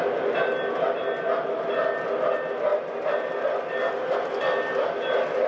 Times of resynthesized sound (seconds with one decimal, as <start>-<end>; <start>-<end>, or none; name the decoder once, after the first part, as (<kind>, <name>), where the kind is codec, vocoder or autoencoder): none